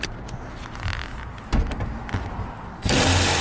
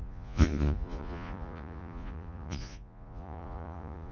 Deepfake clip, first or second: second